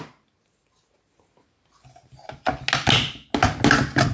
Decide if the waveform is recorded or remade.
recorded